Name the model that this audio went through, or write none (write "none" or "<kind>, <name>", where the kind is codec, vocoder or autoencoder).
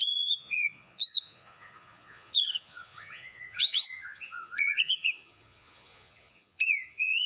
vocoder, Vocos